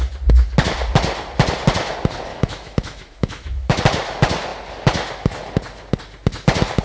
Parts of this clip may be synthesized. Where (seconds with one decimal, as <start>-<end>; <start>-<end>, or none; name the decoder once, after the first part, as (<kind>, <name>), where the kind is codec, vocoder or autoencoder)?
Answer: 2.3-3.8 (autoencoder, DAC-VAE)

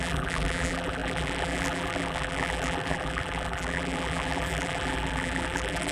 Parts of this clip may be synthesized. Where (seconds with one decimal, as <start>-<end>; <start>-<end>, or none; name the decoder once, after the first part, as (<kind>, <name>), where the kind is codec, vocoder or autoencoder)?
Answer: 0.0-5.9 (vocoder, BigVGAN v2)

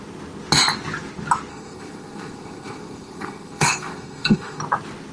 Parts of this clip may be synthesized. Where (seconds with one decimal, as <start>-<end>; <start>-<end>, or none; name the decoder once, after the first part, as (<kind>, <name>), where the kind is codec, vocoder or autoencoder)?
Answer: 1.5-4.6 (codec, SNAC)

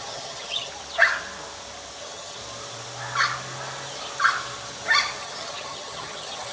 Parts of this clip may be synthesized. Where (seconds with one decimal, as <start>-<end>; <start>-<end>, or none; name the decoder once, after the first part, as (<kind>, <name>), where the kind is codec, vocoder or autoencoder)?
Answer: 0.0-0.7 (vocoder, HiFi-GAN); 2.0-2.4; 5.2-6.5

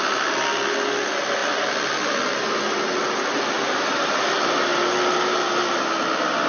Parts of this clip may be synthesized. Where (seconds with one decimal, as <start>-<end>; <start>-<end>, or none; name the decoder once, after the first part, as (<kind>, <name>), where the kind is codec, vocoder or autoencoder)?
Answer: none